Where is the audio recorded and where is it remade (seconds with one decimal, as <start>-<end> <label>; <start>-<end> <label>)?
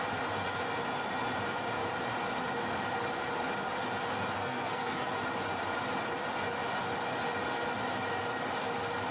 0.0-4.4 recorded; 4.4-5.1 remade; 5.1-9.1 recorded